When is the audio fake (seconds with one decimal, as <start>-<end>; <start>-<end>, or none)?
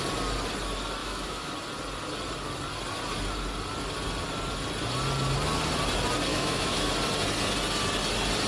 1.0-1.5; 6.3-6.9